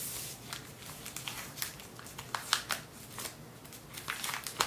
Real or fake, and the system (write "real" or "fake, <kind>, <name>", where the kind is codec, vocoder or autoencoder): real